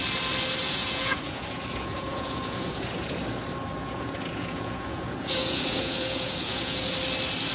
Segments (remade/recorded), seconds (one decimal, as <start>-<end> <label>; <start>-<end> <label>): 0.0-0.6 recorded; 0.6-3.2 remade; 3.2-3.8 recorded; 3.8-6.9 remade; 6.9-7.5 recorded

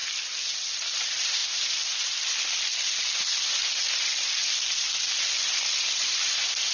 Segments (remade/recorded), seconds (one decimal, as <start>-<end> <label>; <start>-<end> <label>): 0.0-6.7 recorded

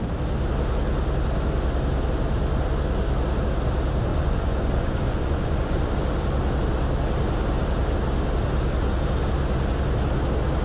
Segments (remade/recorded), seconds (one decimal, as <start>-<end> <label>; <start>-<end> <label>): 0.0-4.1 recorded; 4.1-5.9 remade; 5.9-10.6 recorded